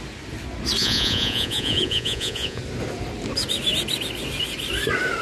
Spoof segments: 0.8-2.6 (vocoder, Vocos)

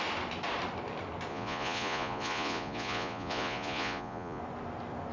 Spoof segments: 1.3-4.4 (vocoder, Vocos)

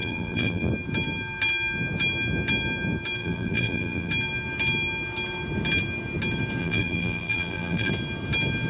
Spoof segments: 0.0-0.7 (vocoder, BigVGAN v2); 3.2-4.1; 6.6-7.9

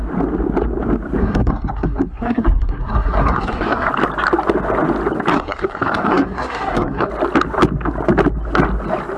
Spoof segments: 1.2-3.9 (codec, SNAC); 5.3-7.1

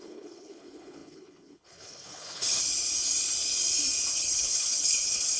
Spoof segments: 0.0-2.6 (codec, HILCodec); 4.1-5.4

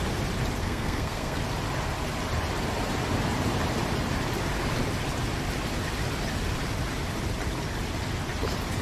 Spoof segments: 0.6-1.4 (codec, SNAC)

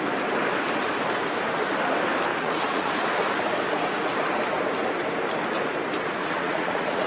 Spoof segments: 2.3-2.9 (vocoder, Vocos); 6.2-7.1